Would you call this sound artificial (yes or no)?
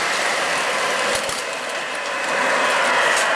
no